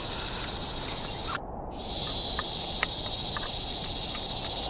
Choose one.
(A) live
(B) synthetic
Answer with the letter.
A